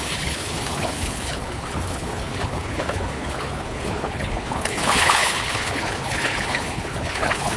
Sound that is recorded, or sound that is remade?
remade